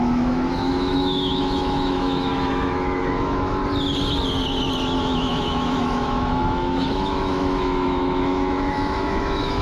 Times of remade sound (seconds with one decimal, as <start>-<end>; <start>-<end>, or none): 0.0-3.6; 5.0-9.6